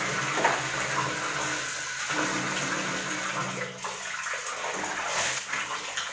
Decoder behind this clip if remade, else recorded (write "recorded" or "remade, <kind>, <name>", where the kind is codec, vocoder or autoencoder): recorded